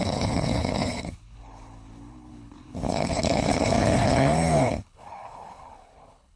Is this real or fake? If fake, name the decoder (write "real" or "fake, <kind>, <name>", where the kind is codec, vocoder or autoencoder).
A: fake, codec, HILCodec